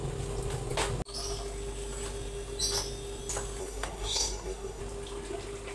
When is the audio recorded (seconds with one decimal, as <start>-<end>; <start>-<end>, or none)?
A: 0.0-3.6; 4.8-5.7